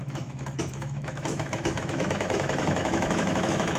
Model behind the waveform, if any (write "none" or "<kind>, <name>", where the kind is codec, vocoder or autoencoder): autoencoder, DAC-VAE